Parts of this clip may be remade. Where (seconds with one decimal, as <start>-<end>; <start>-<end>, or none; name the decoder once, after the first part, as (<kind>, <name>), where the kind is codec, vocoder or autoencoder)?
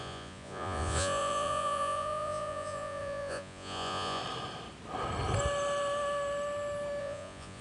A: 0.0-4.2 (vocoder, Vocos); 7.0-7.6